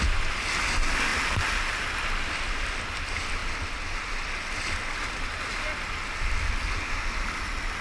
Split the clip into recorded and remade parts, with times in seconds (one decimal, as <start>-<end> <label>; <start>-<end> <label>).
0.0-1.1 recorded; 1.1-1.8 remade; 1.8-7.8 recorded